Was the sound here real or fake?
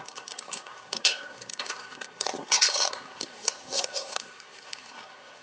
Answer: fake